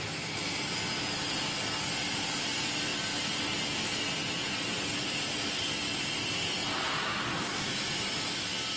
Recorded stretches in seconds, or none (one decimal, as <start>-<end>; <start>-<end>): 0.0-8.8